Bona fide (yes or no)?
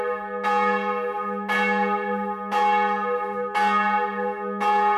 yes